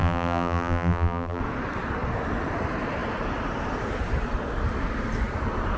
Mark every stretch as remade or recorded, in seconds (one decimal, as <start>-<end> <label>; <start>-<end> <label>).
0.0-1.4 remade; 1.4-5.8 recorded